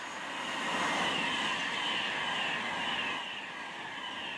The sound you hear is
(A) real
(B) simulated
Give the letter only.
A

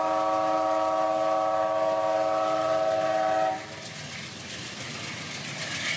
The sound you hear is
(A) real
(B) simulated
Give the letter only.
A